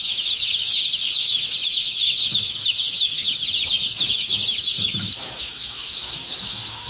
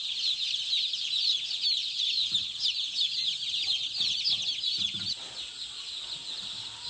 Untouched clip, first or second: second